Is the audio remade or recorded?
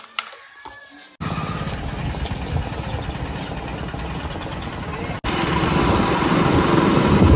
recorded